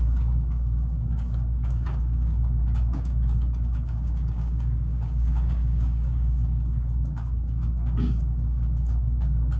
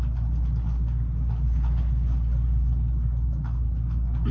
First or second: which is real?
second